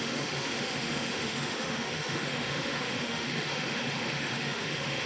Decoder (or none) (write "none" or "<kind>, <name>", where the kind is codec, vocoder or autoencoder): autoencoder, DAC-VAE